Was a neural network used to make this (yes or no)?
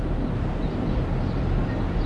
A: no